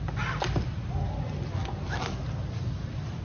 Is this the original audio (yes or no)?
yes